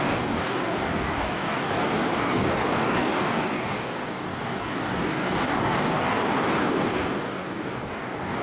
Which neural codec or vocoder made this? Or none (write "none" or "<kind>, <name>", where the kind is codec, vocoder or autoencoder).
codec, DAC